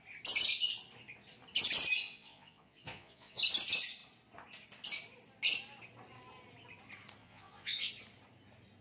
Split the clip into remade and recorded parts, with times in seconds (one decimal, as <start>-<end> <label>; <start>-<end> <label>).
0.0-2.0 recorded; 2.0-3.4 remade; 3.4-7.2 recorded; 7.2-7.9 remade; 7.9-8.8 recorded